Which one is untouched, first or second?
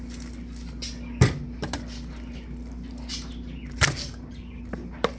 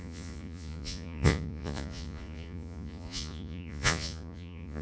first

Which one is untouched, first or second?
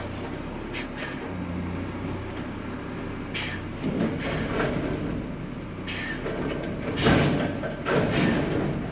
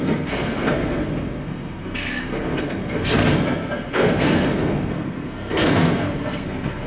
first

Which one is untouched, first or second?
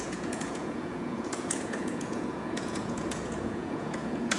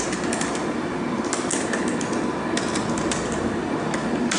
second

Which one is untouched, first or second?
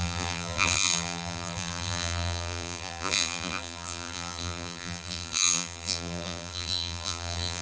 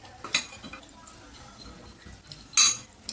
second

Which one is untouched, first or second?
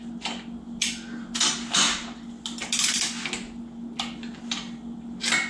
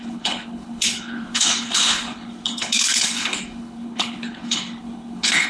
first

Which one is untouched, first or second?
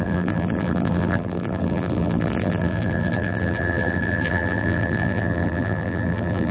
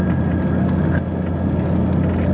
second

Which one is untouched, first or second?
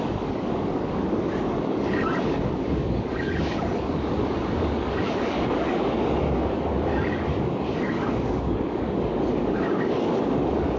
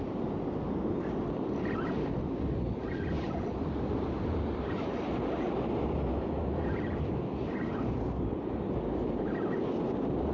second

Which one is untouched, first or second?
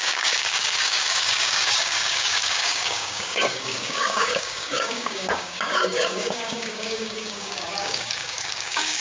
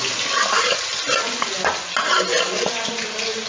second